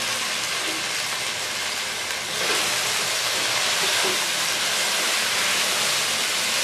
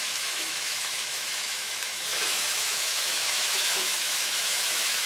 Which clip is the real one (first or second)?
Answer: first